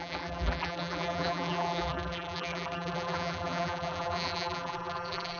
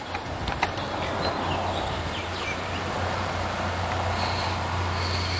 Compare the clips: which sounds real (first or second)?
second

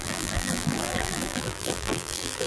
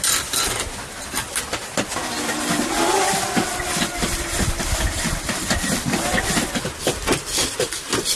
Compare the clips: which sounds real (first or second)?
second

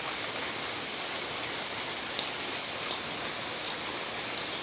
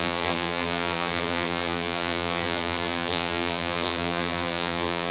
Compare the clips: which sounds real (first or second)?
first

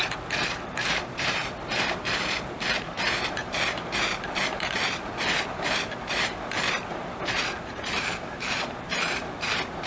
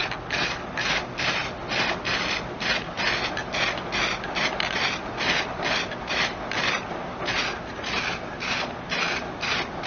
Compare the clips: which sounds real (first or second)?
second